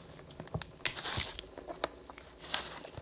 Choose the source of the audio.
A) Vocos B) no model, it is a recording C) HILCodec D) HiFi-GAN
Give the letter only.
B